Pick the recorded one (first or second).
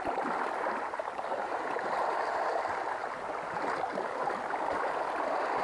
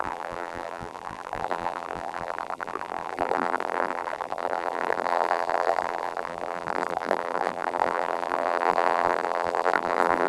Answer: first